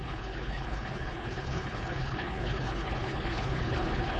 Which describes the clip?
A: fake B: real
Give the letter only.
A